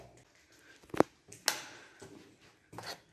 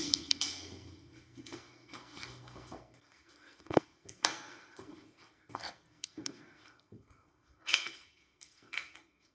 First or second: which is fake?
second